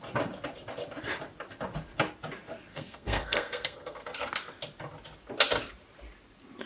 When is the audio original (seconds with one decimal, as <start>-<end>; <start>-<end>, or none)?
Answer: 0.0-2.7; 4.2-6.7